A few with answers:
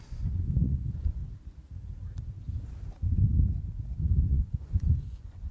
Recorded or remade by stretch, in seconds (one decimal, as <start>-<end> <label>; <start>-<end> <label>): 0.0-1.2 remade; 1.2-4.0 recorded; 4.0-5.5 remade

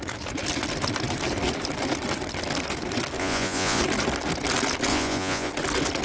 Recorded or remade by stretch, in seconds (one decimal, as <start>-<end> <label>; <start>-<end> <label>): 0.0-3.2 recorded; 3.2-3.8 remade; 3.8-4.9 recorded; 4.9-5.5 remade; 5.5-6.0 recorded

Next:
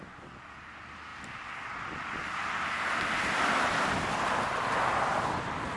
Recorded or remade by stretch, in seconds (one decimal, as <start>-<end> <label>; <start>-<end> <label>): 0.0-1.1 recorded; 1.1-3.7 remade; 3.7-5.8 recorded

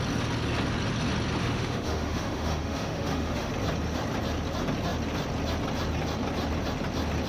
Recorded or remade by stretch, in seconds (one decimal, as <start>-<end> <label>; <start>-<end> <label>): 0.0-1.4 recorded; 1.4-3.5 remade; 3.5-7.3 recorded

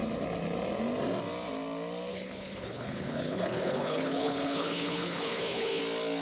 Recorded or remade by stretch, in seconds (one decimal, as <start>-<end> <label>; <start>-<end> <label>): 0.0-2.1 recorded; 2.1-5.8 remade; 5.8-6.2 recorded